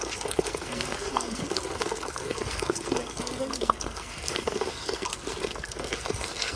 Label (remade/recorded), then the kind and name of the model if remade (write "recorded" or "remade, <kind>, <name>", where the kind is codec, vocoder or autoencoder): remade, codec, SNAC